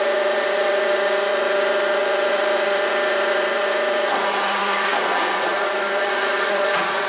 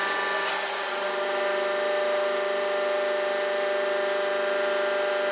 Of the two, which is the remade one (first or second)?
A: first